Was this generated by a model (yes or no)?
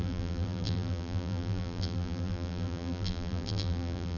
yes